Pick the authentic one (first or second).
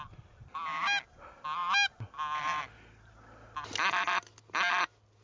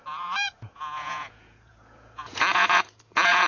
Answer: first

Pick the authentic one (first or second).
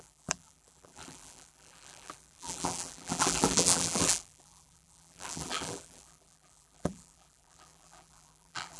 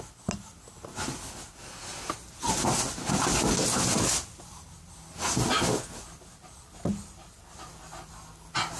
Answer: second